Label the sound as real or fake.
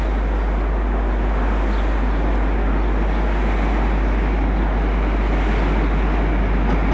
real